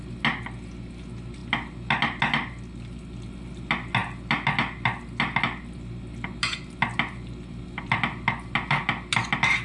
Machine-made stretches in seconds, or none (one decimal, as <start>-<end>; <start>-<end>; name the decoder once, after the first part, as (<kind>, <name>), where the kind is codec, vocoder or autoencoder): none